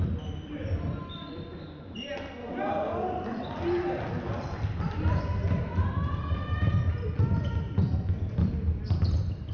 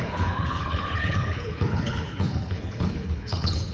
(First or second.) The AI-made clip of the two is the second